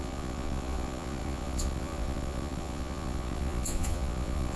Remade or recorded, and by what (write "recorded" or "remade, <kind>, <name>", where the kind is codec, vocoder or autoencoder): remade, vocoder, Vocos